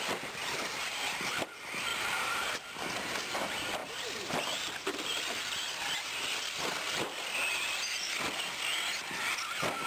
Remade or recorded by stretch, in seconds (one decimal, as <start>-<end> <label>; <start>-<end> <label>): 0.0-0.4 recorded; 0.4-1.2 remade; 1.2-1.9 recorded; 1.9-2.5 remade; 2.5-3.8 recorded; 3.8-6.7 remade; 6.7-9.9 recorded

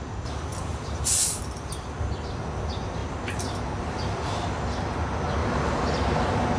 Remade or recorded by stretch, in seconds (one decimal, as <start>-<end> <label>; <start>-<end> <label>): 0.0-0.5 recorded; 0.5-1.4 remade; 1.4-5.4 recorded; 5.4-6.6 remade

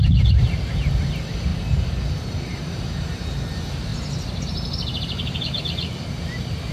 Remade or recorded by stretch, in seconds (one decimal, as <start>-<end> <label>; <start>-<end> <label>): 0.0-1.5 recorded; 1.5-2.7 remade; 2.7-3.9 recorded; 3.9-5.6 remade; 5.6-6.7 recorded

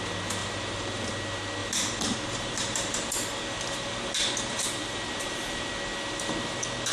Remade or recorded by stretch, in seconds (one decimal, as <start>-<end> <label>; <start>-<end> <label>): 0.0-0.4 recorded; 0.4-1.1 remade; 1.1-1.6 recorded; 1.6-5.7 remade; 5.7-6.9 recorded